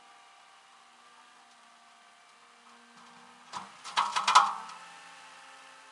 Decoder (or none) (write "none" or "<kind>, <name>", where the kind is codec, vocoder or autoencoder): none